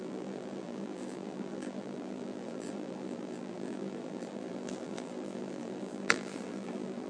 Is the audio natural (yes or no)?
no